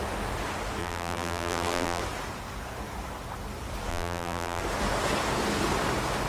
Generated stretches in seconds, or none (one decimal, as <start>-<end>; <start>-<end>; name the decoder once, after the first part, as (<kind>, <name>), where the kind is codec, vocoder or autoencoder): 0.8-2.0 (vocoder, BigVGAN v2); 3.9-4.6